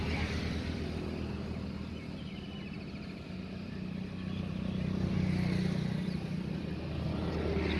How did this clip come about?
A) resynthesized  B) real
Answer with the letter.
B